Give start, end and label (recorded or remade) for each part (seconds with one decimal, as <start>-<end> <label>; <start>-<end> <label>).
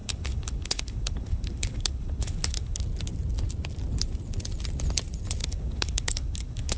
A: 0.0-2.8 remade; 2.8-5.4 recorded; 5.4-6.8 remade